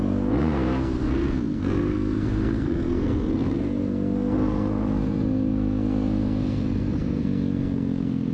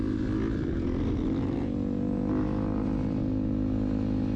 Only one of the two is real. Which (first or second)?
second